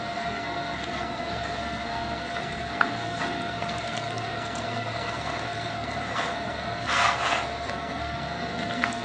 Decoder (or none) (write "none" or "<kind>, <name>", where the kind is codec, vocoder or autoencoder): codec, SNAC